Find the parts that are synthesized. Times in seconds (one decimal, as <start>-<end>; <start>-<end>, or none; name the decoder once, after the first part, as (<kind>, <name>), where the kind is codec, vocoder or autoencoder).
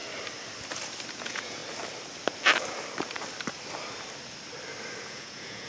1.1-1.6 (vocoder, Vocos); 5.0-5.7